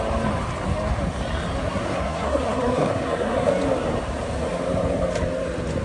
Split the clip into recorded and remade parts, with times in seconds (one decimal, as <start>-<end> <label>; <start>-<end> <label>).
0.0-1.6 recorded; 1.6-3.5 remade; 3.5-5.8 recorded